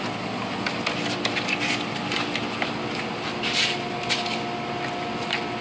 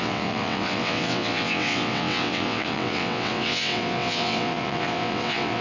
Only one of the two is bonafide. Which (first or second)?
first